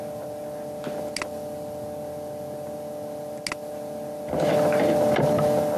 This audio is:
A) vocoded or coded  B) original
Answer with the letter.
B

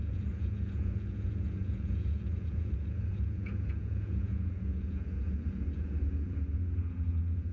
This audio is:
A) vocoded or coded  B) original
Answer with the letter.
A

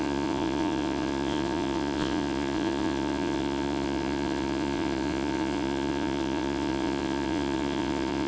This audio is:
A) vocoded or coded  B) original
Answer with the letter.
A